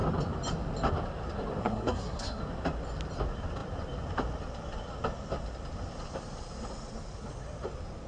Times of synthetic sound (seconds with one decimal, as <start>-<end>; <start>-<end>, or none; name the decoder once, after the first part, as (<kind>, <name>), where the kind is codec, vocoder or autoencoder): 1.6-2.4 (codec, SNAC)